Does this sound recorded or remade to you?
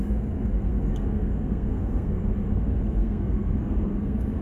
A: remade